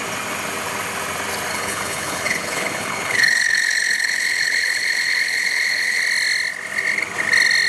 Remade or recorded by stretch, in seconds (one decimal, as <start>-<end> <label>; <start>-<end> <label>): 0.0-1.5 recorded; 1.5-6.0 remade; 6.0-7.7 recorded